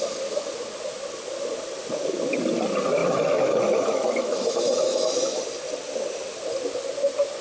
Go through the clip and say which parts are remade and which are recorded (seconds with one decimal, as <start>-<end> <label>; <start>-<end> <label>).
0.0-3.0 recorded; 3.0-5.4 remade; 5.4-7.4 recorded